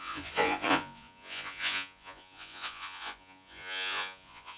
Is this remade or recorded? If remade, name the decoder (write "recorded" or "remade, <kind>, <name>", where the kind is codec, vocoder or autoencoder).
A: remade, vocoder, Vocos